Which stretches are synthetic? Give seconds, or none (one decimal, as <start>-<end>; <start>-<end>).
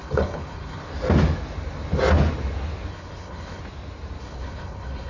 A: 0.0-0.9; 2.9-3.6; 4.2-5.1